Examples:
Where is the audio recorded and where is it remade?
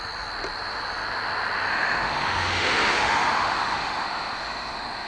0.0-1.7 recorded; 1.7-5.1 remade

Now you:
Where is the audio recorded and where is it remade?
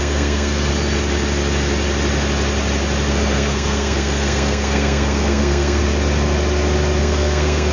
0.0-0.7 remade; 0.7-3.1 recorded; 3.1-5.8 remade; 5.8-7.0 recorded; 7.0-7.7 remade